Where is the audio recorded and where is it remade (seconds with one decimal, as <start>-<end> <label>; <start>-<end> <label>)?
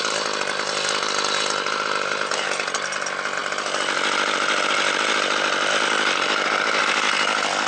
0.0-7.7 recorded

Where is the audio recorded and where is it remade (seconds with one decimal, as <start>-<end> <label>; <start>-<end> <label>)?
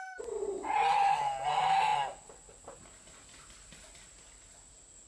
0.0-5.1 recorded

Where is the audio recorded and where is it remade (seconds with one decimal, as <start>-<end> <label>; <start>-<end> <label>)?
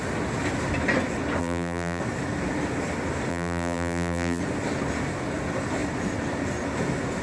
0.0-1.4 recorded; 1.4-2.0 remade; 2.0-3.3 recorded; 3.3-4.4 remade; 4.4-7.2 recorded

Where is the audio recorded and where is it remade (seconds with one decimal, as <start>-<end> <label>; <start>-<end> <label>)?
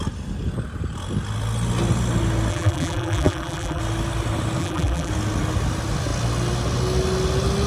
0.0-2.5 recorded; 2.5-3.8 remade; 3.8-4.6 recorded; 4.6-5.1 remade; 5.1-7.7 recorded